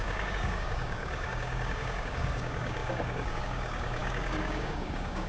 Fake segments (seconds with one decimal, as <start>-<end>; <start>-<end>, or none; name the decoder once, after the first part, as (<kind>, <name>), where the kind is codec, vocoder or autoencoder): 0.0-5.3 (codec, DAC)

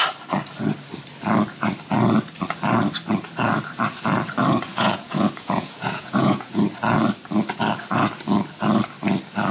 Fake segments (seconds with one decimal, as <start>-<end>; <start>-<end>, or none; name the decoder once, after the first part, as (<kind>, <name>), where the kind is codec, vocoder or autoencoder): 4.7-6.6 (vocoder, Vocos)